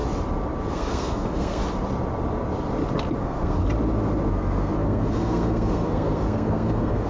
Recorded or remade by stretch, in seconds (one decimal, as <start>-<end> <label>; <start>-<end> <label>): 0.0-0.7 recorded; 0.7-1.6 remade; 1.6-3.2 recorded; 3.2-3.6 remade; 3.6-4.3 recorded; 4.3-7.1 remade